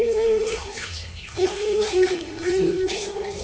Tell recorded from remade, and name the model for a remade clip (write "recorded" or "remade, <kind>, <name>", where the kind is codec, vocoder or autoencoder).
remade, codec, SNAC